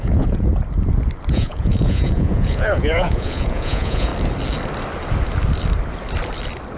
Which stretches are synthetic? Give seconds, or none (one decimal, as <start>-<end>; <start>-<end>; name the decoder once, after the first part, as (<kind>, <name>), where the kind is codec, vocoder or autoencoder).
0.0-0.5 (vocoder, Vocos); 1.3-4.1